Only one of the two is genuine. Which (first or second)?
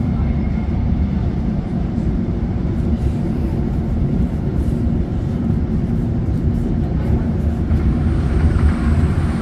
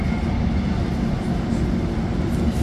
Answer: second